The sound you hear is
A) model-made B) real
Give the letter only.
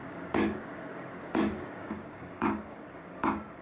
A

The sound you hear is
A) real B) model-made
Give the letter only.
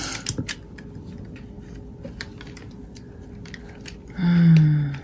A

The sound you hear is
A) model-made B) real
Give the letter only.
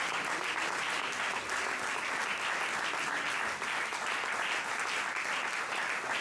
B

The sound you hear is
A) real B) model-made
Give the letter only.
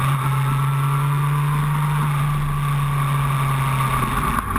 A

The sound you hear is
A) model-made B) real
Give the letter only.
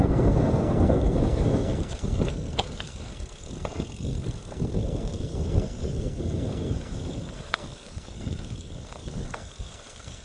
A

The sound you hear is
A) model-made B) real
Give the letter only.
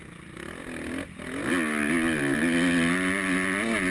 B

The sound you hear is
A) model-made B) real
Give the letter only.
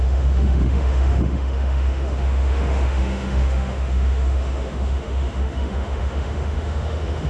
A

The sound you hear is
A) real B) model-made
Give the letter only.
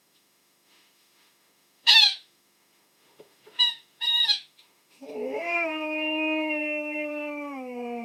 B